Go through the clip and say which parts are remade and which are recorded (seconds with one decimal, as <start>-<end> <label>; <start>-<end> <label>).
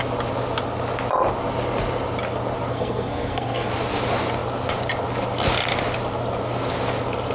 0.0-2.7 recorded; 2.7-3.7 remade; 3.7-7.3 recorded